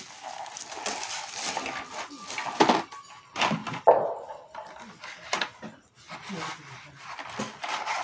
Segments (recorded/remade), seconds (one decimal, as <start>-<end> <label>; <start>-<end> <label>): 0.0-8.0 recorded